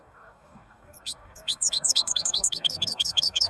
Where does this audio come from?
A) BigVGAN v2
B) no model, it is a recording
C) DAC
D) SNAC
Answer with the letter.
C